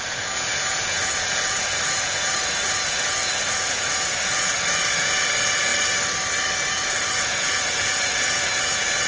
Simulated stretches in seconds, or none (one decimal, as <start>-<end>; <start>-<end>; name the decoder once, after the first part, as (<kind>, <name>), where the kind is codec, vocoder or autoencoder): 0.0-5.7 (vocoder, Vocos); 6.7-9.1